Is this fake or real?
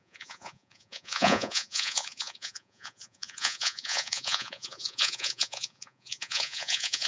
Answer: fake